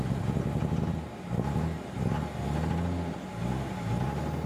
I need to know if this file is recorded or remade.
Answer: recorded